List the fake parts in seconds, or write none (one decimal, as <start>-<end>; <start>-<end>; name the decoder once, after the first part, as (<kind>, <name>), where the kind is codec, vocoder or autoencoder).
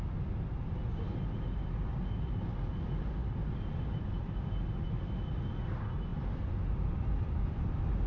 3.2-4.5 (vocoder, BigVGAN v2); 6.1-8.1